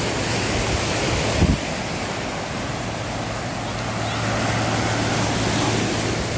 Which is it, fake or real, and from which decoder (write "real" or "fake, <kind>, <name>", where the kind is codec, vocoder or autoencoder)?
real